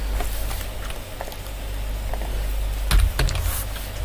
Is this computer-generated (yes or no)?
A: no